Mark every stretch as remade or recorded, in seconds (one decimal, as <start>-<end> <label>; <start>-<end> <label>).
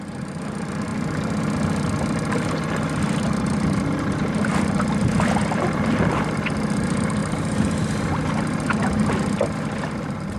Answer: 0.0-10.4 recorded